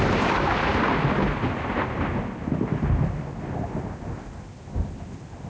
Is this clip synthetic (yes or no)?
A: no